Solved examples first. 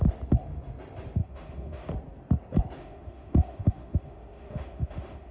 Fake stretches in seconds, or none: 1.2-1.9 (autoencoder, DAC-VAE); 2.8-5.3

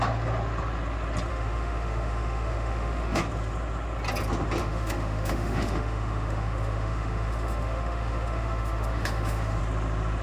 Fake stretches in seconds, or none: 1.3-3.2 (autoencoder, DAC-VAE); 4.6-9.6

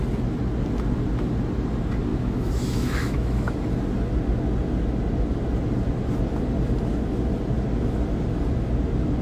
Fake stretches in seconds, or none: 2.1-3.5 (autoencoder, DAC-VAE)

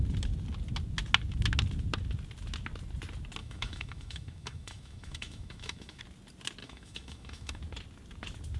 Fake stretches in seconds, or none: 3.4-6.0 (autoencoder, DAC-VAE); 6.6-7.6

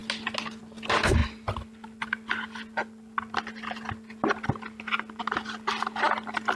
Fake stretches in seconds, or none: none

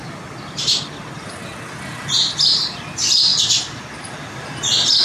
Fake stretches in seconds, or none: none

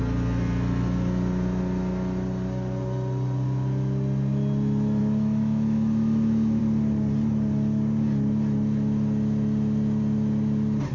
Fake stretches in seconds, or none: 5.0-6.6 (autoencoder, DAC-VAE)